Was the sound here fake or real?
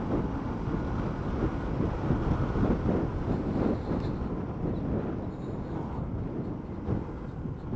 real